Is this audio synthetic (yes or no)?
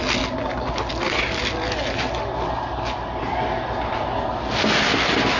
no